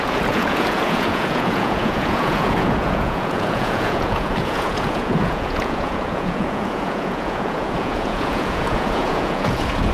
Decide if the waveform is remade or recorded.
remade